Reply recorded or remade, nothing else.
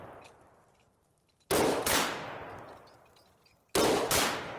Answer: recorded